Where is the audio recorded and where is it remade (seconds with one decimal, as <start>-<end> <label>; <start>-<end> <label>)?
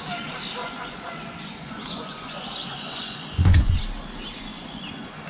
0.0-0.6 recorded; 0.6-3.8 remade; 3.8-4.5 recorded; 4.5-5.3 remade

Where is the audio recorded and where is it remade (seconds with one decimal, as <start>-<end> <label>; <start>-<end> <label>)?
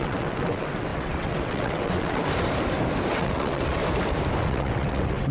0.0-2.2 remade; 2.2-3.1 recorded; 3.1-3.8 remade; 3.8-4.4 recorded; 4.4-5.3 remade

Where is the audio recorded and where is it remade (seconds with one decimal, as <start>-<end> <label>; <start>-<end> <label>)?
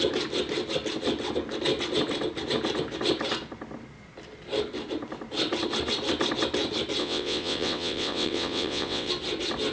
0.0-7.0 recorded; 7.0-9.1 remade; 9.1-9.7 recorded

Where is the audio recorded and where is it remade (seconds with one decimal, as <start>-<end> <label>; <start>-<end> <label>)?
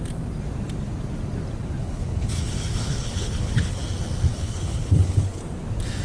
0.0-1.8 recorded; 1.8-3.8 remade; 3.8-4.3 recorded; 4.3-5.4 remade; 5.4-6.0 recorded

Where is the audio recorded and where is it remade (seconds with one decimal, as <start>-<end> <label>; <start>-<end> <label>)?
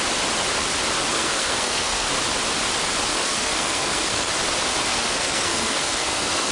0.0-1.1 recorded; 1.1-2.1 remade; 2.1-3.1 recorded; 3.1-4.3 remade; 4.3-4.9 recorded; 4.9-6.5 remade